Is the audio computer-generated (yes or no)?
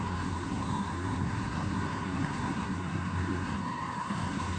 yes